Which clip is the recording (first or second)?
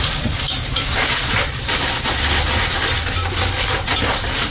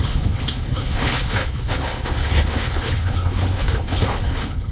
first